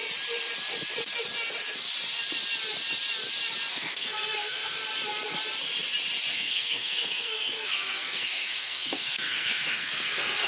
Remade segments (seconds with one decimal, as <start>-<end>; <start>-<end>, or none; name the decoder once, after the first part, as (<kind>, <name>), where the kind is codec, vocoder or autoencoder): 3.7-4.8 (codec, SNAC); 6.3-10.5